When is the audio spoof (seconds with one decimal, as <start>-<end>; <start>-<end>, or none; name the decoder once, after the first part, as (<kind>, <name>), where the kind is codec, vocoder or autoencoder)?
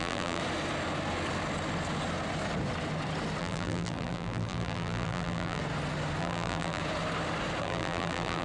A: 0.0-0.4 (vocoder, BigVGAN v2); 3.4-5.6; 6.2-6.8; 7.6-8.4